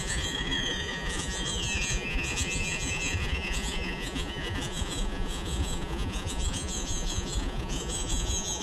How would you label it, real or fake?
fake